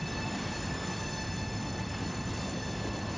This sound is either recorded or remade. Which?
recorded